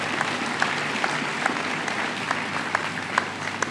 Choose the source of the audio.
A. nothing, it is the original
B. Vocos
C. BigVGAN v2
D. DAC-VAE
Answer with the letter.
A